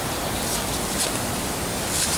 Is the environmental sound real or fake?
real